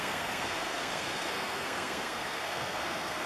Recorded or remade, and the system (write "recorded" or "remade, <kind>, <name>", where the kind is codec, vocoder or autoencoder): remade, codec, SNAC